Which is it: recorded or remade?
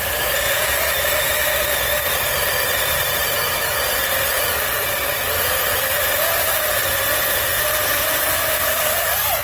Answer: recorded